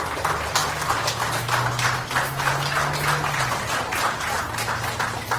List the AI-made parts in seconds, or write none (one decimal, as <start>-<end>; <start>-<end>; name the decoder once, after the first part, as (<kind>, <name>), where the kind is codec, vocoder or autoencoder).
none